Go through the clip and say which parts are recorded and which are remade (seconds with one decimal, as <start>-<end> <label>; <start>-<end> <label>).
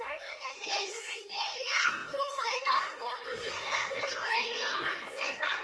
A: 0.0-5.6 remade